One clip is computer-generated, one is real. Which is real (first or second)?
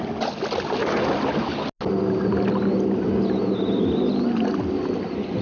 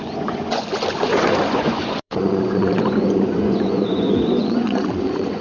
first